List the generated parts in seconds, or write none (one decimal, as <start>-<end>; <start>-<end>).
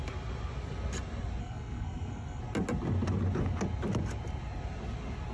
1.4-2.4